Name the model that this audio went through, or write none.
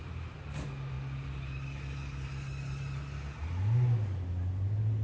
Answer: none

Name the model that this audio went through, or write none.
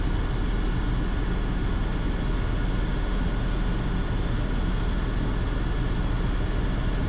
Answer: none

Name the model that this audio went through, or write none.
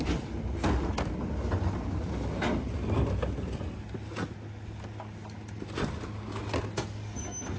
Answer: none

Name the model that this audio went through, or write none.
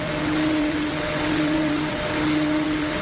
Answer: vocoder, WaveNeXt